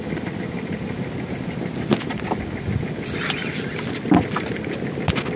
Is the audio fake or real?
real